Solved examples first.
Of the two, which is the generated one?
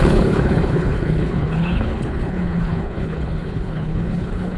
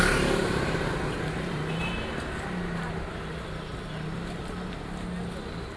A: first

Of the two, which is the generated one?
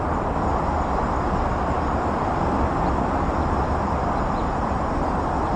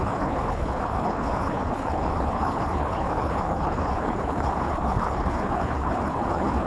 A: second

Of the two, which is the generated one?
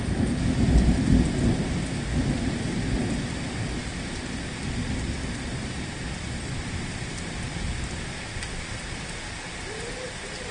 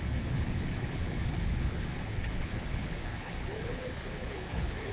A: second